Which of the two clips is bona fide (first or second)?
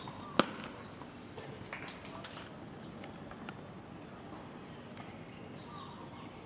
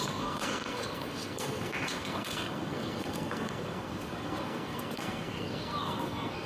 first